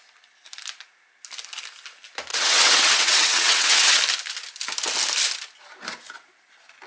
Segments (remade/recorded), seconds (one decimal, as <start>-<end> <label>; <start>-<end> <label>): 0.0-2.3 recorded; 2.3-4.0 remade; 4.0-6.9 recorded